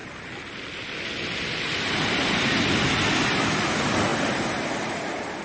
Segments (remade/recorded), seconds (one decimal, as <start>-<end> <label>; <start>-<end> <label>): 0.0-5.4 recorded